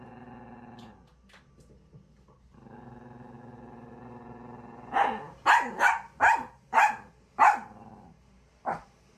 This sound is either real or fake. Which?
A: real